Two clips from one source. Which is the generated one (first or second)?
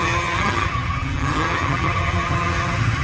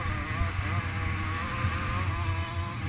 first